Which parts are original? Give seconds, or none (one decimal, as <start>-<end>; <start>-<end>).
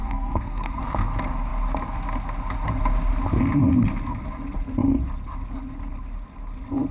0.8-6.9